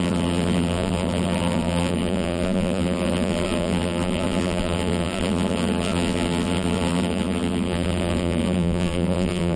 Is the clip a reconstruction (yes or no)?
yes